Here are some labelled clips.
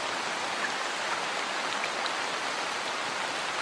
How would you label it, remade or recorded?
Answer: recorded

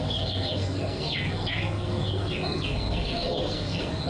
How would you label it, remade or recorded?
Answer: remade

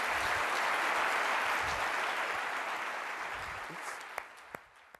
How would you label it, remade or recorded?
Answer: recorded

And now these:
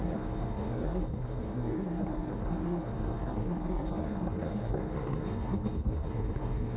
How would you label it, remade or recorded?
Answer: remade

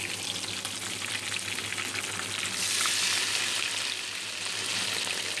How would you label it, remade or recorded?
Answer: recorded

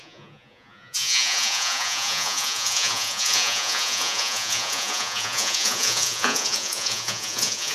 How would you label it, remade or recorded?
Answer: remade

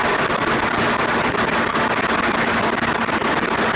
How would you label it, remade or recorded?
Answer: recorded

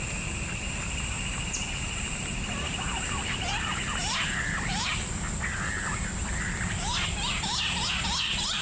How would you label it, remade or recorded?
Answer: recorded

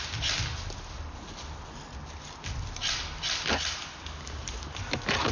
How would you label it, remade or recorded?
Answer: recorded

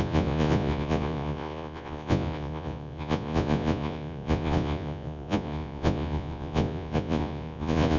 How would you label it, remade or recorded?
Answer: remade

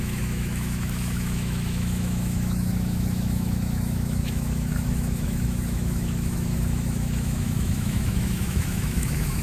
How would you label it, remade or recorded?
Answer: remade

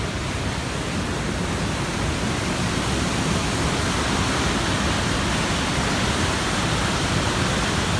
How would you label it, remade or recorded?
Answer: recorded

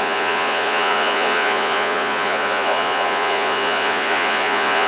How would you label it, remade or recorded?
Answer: remade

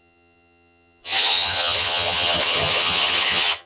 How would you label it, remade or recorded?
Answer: remade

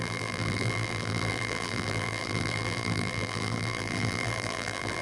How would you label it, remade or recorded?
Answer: remade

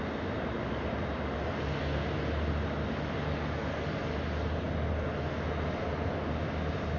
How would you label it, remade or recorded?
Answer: recorded